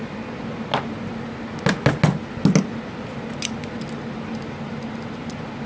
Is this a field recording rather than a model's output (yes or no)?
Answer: yes